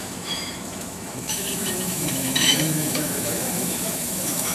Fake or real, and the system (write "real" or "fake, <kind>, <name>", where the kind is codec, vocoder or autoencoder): fake, autoencoder, DAC-VAE